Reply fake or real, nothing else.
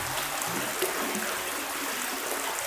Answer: real